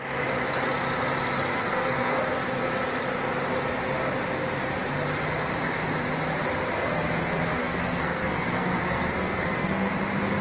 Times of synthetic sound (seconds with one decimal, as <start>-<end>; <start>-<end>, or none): 1.5-2.2; 7.6-9.9